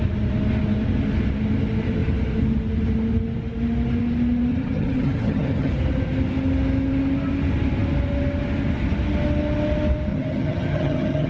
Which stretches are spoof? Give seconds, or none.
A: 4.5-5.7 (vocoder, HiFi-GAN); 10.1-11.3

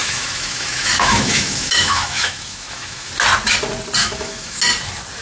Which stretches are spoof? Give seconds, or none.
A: 0.0-3.1 (autoencoder, DAC-VAE); 4.0-4.6

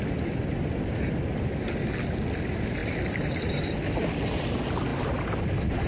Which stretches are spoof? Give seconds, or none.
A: none

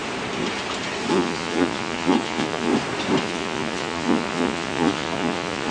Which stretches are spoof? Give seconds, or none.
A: 1.1-2.7 (vocoder, Vocos); 3.2-5.7

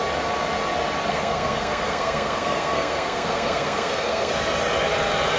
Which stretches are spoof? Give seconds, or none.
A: 1.1-4.3 (codec, SNAC)

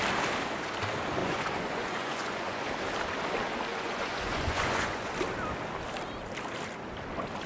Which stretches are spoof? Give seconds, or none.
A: 1.2-2.6 (vocoder, Vocos); 3.7-5.1